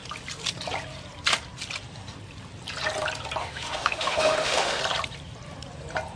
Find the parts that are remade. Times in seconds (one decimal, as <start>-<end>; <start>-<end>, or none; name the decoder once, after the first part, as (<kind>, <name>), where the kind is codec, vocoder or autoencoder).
3.4-4.8 (autoencoder, DAC-VAE)

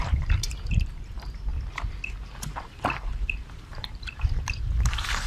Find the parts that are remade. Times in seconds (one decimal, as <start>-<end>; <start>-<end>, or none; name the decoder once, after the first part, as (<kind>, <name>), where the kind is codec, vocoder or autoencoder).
0.0-1.5 (vocoder, BigVGAN v2); 2.4-5.3

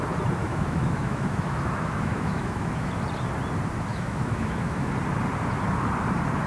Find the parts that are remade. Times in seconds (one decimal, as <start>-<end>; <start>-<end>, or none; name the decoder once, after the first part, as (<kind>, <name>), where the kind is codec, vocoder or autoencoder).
0.4-2.9 (autoencoder, DAC-VAE); 3.9-4.9

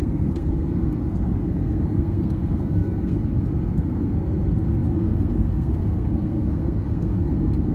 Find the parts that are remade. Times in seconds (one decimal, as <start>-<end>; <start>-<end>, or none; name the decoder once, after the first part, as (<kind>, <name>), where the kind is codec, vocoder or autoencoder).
0.0-7.7 (codec, SNAC)

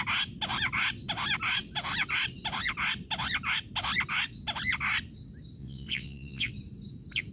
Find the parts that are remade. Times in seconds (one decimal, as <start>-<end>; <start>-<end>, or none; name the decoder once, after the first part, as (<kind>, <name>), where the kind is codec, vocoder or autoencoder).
5.6-6.5 (vocoder, WaveNeXt)

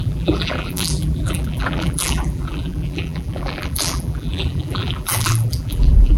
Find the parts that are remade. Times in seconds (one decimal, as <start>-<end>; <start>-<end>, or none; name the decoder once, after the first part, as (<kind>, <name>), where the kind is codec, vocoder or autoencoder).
0.0-6.2 (vocoder, BigVGAN v2)

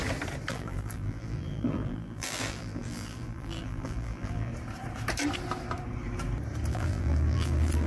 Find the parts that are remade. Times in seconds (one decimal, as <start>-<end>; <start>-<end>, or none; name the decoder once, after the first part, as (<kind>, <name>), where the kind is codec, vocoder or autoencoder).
0.5-4.5 (vocoder, BigVGAN v2); 6.7-7.9